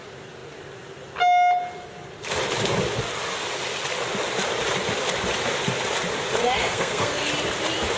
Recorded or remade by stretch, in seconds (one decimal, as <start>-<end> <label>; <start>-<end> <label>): 0.0-6.4 recorded; 6.4-7.3 remade; 7.3-8.0 recorded